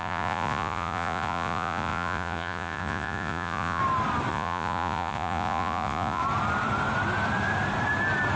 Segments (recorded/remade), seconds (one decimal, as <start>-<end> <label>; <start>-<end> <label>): 0.0-3.8 remade; 3.8-4.3 recorded; 4.3-6.2 remade; 6.2-8.4 recorded